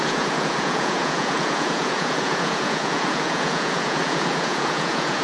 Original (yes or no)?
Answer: no